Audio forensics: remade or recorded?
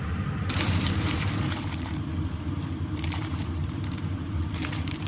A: remade